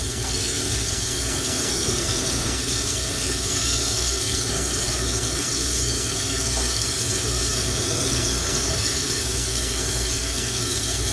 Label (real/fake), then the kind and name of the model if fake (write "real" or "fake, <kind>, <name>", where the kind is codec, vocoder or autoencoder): fake, codec, SNAC